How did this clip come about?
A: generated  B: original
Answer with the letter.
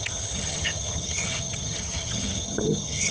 A